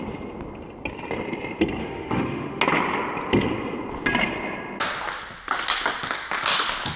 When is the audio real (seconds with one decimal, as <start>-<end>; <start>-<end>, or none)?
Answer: 0.0-1.8; 2.6-7.0